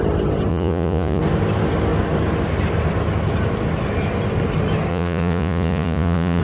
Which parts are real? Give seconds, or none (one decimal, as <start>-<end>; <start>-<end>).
0.0-0.5; 1.2-4.9